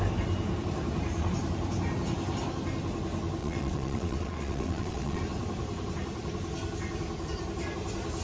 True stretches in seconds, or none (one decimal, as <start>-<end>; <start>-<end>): 0.0-3.4; 5.2-8.2